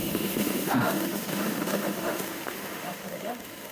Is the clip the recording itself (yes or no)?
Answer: no